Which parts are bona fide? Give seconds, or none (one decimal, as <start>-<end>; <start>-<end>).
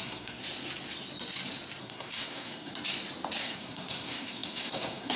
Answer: 0.4-1.8; 2.7-3.4